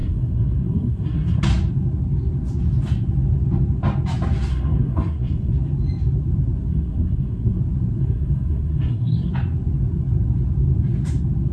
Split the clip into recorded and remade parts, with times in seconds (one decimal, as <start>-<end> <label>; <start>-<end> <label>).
0.0-1.4 remade; 1.4-4.5 recorded; 4.5-5.5 remade; 5.5-6.7 recorded; 6.7-7.6 remade; 7.6-8.0 recorded; 8.0-9.3 remade; 9.3-11.5 recorded